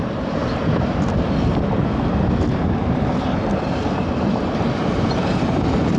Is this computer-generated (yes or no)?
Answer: no